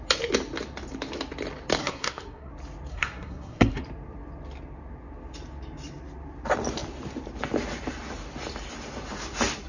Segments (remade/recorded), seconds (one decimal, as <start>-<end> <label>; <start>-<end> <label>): 0.0-1.8 recorded; 1.8-2.5 remade; 2.5-2.9 recorded; 2.9-3.8 remade; 3.8-9.7 recorded